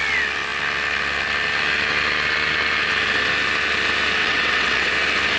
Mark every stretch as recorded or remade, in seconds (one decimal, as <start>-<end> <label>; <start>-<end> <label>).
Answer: 0.0-4.2 recorded; 4.2-4.9 remade; 4.9-5.4 recorded